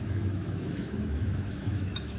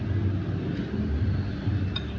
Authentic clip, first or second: second